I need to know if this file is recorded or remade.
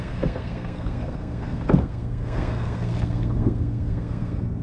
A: remade